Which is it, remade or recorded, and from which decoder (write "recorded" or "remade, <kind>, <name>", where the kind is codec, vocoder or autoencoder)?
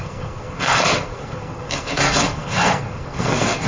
remade, codec, SNAC